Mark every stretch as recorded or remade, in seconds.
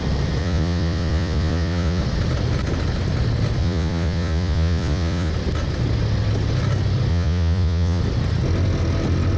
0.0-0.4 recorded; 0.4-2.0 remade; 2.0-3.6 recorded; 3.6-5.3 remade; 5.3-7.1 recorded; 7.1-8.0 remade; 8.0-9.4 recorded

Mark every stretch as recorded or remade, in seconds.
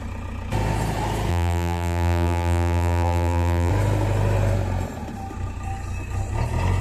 0.0-1.3 recorded; 1.3-3.7 remade; 3.7-6.8 recorded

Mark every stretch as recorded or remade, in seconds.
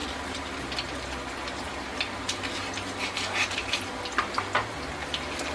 0.0-5.5 recorded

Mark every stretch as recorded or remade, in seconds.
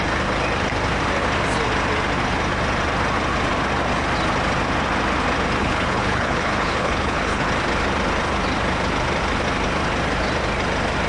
0.0-5.6 recorded; 5.6-7.5 remade; 7.5-11.1 recorded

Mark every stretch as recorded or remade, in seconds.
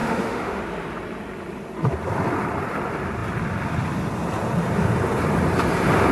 0.0-0.6 remade; 0.6-6.1 recorded